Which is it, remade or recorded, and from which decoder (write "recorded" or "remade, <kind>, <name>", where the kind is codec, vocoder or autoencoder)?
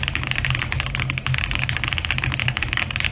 recorded